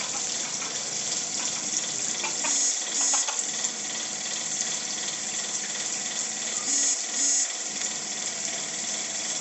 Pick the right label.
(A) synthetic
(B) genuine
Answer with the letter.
B